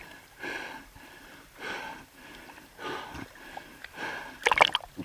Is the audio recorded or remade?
remade